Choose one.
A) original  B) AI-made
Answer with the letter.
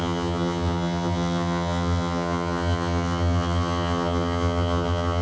B